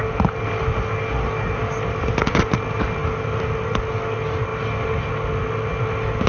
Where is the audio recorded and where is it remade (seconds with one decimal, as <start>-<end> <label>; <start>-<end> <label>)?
0.0-6.3 recorded